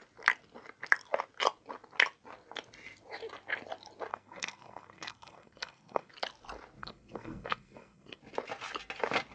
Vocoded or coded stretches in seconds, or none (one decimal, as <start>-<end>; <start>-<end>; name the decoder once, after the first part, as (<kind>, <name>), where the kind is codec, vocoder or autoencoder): 4.1-6.1 (codec, SNAC); 6.8-8.2